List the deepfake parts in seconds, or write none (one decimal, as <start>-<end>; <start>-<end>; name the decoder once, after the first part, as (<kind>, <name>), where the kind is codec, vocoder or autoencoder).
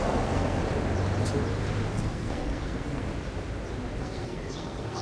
0.0-0.6 (codec, SNAC); 1.9-3.1; 4.0-5.0